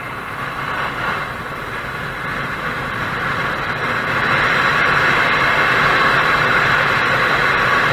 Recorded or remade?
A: recorded